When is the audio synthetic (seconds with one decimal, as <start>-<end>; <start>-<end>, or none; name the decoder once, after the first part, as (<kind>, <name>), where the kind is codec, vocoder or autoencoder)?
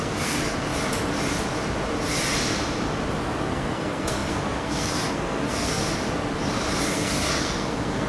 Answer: 0.0-0.7 (codec, SNAC); 3.4-5.8; 6.8-8.1